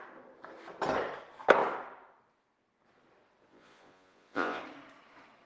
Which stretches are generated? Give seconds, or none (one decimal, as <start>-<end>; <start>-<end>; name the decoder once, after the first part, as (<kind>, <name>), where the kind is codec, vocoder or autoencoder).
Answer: 3.5-4.6 (vocoder, Vocos)